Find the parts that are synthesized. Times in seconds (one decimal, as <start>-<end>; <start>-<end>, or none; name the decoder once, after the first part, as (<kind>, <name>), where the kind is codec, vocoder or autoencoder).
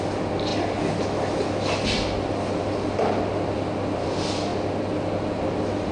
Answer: none